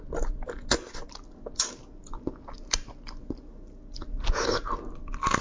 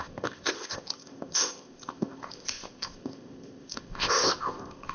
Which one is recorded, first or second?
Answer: first